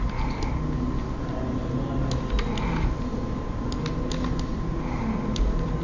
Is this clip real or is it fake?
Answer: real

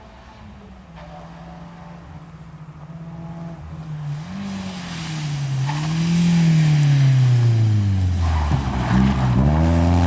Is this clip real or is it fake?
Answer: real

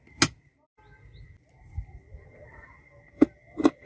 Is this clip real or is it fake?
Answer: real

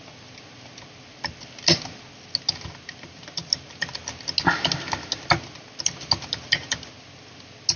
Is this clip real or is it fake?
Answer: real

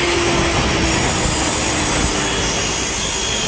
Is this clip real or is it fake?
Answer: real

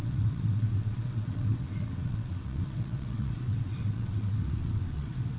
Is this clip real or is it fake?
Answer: fake